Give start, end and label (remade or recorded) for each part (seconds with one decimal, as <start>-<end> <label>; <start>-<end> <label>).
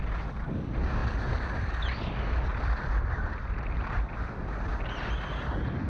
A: 0.0-5.9 recorded